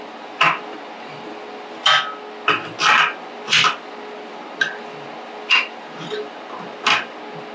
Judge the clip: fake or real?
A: real